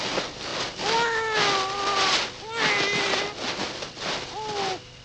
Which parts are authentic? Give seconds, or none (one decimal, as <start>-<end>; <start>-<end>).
0.0-5.0